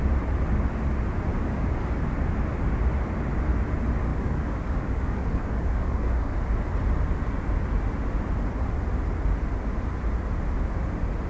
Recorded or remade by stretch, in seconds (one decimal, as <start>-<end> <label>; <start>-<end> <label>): 0.0-1.3 recorded; 1.3-2.0 remade; 2.0-4.1 recorded; 4.1-6.3 remade; 6.3-11.3 recorded